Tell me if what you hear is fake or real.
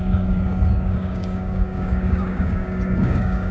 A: fake